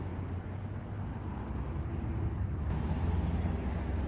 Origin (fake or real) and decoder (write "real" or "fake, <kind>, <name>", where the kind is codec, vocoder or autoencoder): real